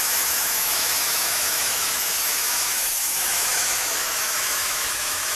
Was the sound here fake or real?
fake